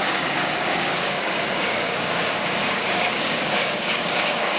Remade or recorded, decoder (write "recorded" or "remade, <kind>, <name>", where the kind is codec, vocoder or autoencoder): remade, codec, DAC